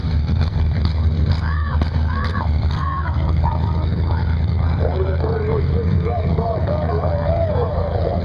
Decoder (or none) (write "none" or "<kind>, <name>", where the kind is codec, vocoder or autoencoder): codec, SNAC